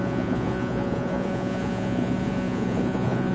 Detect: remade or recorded remade